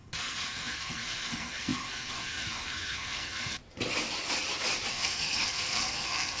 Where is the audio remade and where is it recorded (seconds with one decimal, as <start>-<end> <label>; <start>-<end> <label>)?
0.0-3.6 remade; 3.6-4.9 recorded; 4.9-6.4 remade